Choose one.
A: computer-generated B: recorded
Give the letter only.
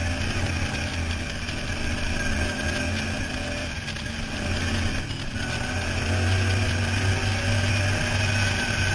B